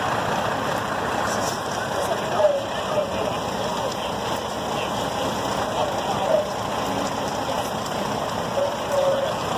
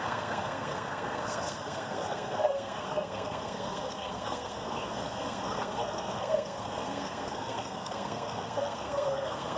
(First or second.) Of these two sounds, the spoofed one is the second